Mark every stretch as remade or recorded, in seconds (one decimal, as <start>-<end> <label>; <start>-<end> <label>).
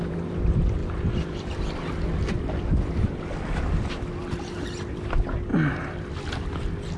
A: 0.0-7.0 recorded